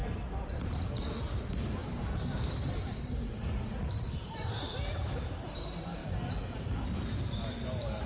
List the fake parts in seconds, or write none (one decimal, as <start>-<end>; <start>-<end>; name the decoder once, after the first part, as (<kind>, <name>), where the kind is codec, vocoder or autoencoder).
0.5-6.0 (vocoder, BigVGAN v2); 7.5-8.1